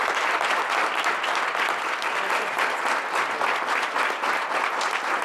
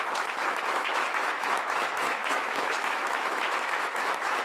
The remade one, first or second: second